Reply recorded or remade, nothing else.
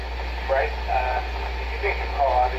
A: recorded